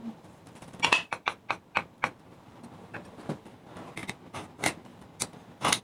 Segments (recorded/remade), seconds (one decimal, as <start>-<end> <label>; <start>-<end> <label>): 0.0-3.5 remade; 3.5-4.9 recorded; 4.9-5.8 remade